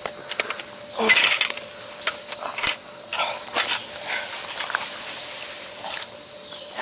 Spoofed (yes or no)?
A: no